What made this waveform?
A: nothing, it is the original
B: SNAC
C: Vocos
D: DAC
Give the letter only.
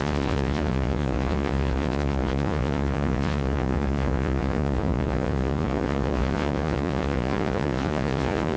C